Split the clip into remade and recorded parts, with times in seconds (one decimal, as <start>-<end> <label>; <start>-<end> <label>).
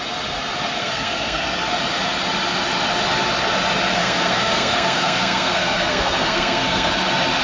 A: 0.0-0.8 recorded; 0.8-1.7 remade; 1.7-4.0 recorded; 4.0-6.9 remade; 6.9-7.4 recorded